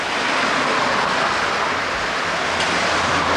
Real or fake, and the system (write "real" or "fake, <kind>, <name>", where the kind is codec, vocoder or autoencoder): fake, vocoder, BigVGAN v2